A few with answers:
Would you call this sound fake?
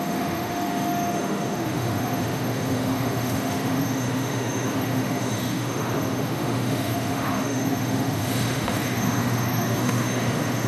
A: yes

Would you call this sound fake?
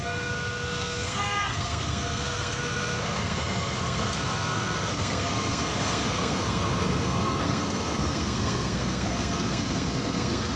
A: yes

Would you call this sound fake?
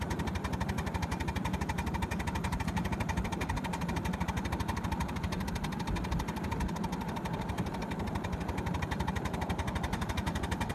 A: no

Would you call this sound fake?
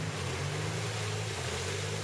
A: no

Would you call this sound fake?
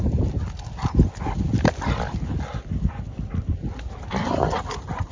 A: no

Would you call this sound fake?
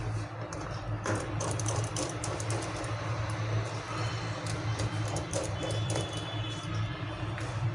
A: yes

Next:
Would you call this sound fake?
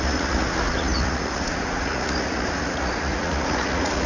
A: yes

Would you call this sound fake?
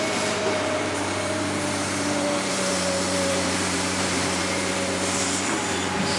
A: yes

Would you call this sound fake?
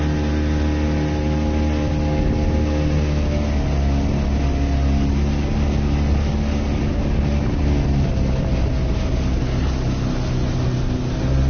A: no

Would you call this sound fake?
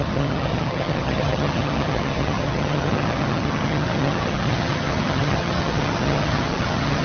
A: yes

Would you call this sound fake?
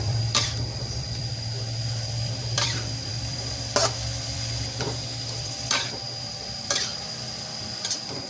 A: yes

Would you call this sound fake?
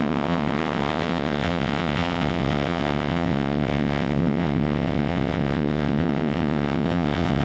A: yes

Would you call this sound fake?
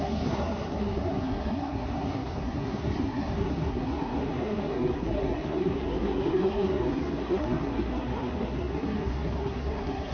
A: yes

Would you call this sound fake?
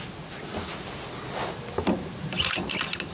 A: no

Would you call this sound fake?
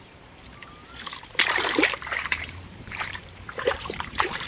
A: yes